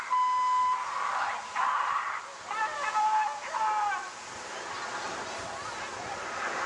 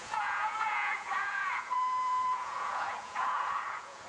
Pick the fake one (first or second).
second